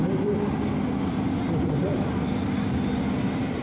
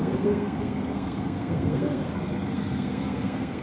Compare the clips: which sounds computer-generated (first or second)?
second